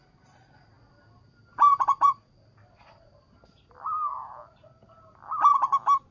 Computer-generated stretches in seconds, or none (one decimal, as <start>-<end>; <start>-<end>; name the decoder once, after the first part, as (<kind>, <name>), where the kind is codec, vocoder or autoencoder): 1.5-2.3 (vocoder, Vocos)